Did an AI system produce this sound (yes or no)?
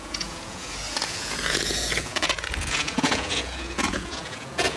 yes